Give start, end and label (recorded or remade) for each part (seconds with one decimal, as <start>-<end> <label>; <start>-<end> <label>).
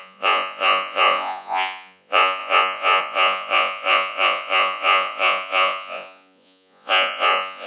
0.0-7.7 remade